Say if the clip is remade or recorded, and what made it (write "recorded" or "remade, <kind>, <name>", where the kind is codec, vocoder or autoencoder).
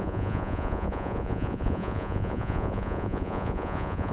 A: remade, vocoder, Vocos